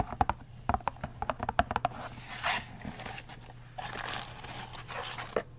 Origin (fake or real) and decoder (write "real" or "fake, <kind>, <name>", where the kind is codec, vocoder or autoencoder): real